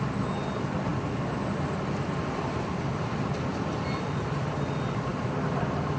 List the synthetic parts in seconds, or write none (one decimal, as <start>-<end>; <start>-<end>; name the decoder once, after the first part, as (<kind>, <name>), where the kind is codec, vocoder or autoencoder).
none